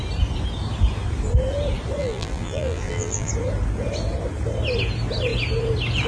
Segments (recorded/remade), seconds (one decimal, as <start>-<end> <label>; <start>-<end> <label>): 0.0-2.0 recorded; 2.0-3.3 remade; 3.3-6.1 recorded